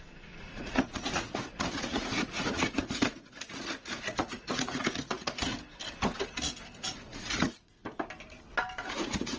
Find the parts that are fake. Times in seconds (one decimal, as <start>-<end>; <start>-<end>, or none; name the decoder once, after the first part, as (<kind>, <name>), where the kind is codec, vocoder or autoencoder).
0.0-5.5 (vocoder, Vocos); 6.8-7.8; 8.8-9.4